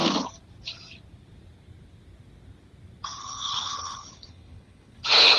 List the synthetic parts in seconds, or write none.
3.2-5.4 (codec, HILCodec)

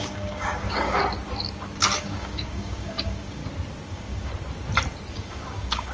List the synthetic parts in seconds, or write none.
0.0-1.0 (codec, DAC); 2.0-3.4; 3.9-4.3; 5.1-5.9

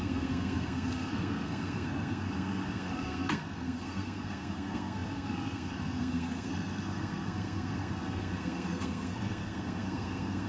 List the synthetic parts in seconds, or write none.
0.0-10.5 (codec, SNAC)

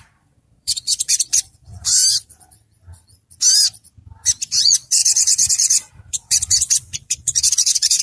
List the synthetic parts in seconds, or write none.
0.0-2.0 (vocoder, Vocos); 4.6-8.0

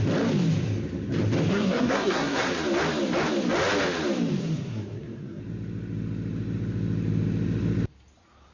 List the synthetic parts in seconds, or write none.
1.5-2.5 (codec, SNAC); 4.4-5.4